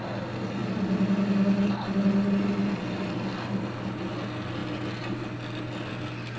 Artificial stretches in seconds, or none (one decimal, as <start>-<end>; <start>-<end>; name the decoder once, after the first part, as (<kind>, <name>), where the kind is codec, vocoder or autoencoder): none